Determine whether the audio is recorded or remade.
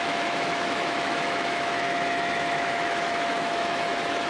remade